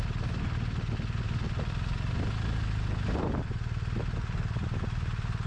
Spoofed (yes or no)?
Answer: no